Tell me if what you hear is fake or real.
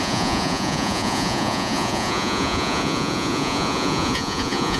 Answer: fake